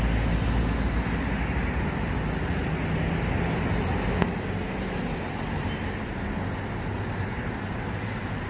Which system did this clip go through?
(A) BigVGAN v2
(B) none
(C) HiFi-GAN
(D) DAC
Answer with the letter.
B